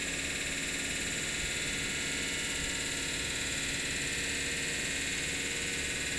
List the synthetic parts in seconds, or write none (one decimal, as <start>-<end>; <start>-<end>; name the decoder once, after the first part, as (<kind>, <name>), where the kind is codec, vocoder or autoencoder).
none

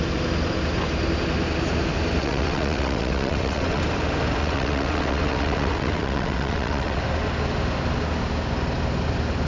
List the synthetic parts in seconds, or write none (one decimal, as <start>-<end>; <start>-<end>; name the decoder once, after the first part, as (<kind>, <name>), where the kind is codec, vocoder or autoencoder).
2.2-3.8 (vocoder, WaveNeXt); 4.4-7.0

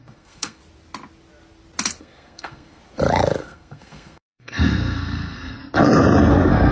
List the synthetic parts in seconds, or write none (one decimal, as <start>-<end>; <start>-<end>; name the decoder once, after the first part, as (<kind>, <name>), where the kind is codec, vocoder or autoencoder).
0.0-0.6 (codec, SNAC); 2.0-2.8; 3.4-5.6; 6.3-6.7

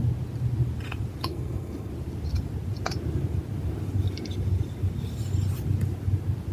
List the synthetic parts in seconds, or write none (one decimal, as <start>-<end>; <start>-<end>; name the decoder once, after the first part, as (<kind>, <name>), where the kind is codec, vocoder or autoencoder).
1.3-1.9 (codec, SNAC)

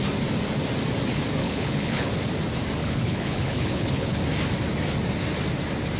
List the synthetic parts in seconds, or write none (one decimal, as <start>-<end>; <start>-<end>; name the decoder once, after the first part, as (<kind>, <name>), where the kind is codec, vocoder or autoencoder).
1.4-2.1 (codec, HILCodec); 2.8-4.2

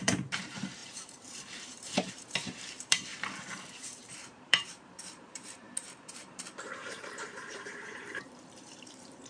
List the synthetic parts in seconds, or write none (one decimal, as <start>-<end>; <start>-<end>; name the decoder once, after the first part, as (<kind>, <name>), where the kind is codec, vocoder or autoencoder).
0.0-9.3 (vocoder, BigVGAN v2)